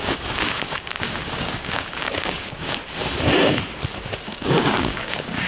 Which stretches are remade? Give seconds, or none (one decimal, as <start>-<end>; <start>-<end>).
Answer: 0.0-2.8; 4.2-5.5